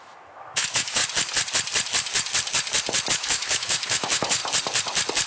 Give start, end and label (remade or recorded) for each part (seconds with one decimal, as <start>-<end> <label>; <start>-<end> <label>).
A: 0.0-1.0 remade; 1.0-3.1 recorded; 3.1-4.4 remade; 4.4-5.3 recorded